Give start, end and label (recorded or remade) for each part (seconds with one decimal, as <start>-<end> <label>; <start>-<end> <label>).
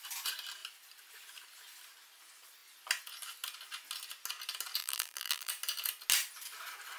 0.0-4.8 recorded; 4.8-5.5 remade; 5.5-7.0 recorded